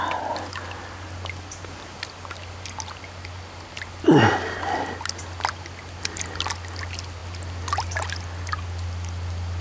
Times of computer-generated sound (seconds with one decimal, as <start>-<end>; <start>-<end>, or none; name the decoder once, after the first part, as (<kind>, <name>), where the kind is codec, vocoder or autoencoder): none